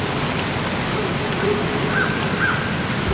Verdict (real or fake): real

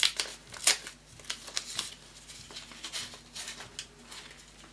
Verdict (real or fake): real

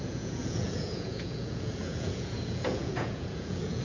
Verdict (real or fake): fake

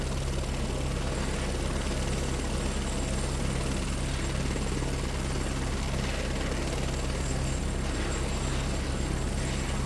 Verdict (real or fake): real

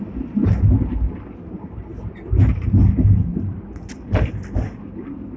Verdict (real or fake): real